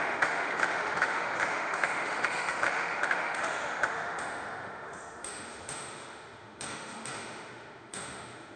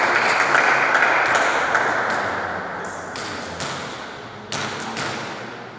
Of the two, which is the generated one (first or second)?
first